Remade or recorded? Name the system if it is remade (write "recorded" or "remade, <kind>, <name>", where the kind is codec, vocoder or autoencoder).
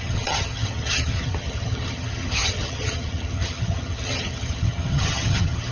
remade, vocoder, HiFi-GAN